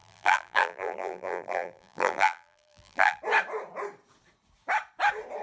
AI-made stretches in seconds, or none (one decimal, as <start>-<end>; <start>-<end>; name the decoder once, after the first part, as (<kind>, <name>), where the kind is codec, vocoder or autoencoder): 0.0-3.2 (vocoder, BigVGAN v2)